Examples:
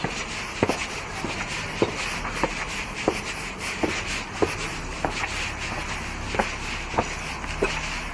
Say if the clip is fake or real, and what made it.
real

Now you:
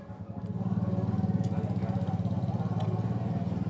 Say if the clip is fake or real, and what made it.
real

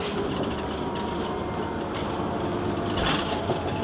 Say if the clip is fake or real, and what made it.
real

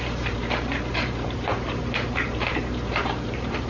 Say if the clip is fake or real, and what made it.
fake, vocoder, BigVGAN v2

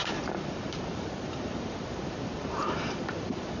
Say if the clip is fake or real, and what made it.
fake, vocoder, BigVGAN v2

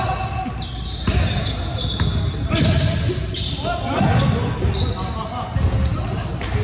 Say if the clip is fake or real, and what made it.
real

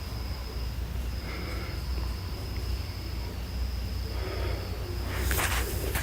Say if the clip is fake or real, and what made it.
real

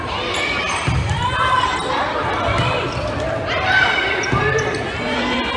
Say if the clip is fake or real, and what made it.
fake, vocoder, BigVGAN v2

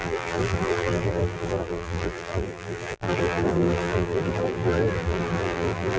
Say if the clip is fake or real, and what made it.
fake, vocoder, BigVGAN v2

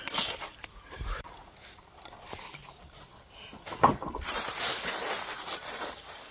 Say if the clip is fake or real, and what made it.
fake, vocoder, BigVGAN v2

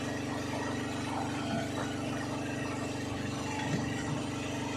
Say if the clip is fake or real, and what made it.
real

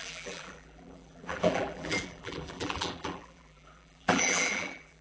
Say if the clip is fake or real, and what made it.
fake, vocoder, BigVGAN v2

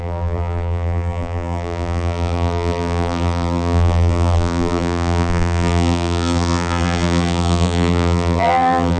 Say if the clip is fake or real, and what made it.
fake, vocoder, BigVGAN v2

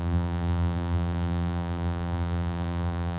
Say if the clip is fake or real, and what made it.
fake, vocoder, BigVGAN v2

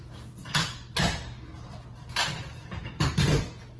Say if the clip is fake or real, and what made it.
real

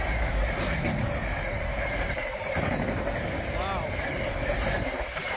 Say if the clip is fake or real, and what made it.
fake, vocoder, BigVGAN v2